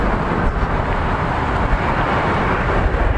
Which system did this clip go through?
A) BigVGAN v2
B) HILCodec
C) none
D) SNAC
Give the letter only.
C